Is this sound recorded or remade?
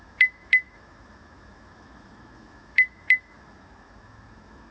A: remade